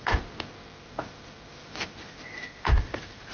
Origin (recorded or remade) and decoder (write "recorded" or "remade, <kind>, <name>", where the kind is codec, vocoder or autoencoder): remade, vocoder, BigVGAN v2